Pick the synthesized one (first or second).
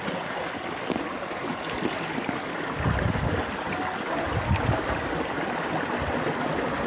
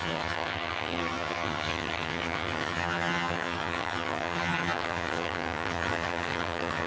second